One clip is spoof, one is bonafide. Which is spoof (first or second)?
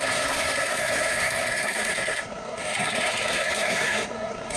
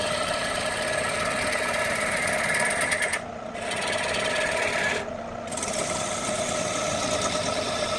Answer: first